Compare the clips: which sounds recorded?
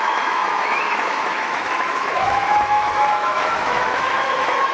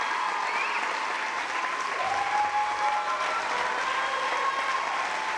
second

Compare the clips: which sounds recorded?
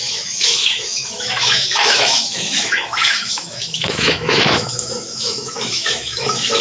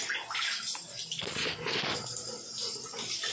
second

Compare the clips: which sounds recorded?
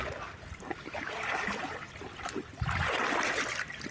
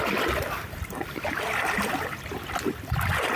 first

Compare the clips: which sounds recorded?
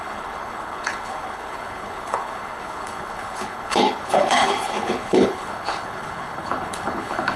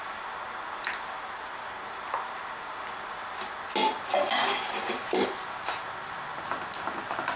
second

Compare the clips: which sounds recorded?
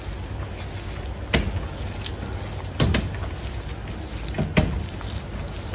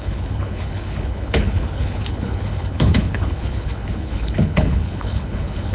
first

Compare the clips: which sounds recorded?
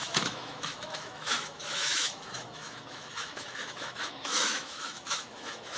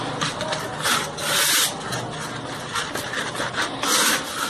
second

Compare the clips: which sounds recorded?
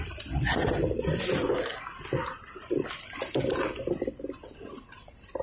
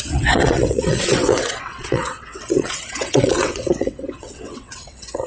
first